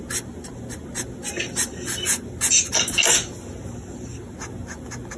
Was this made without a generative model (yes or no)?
yes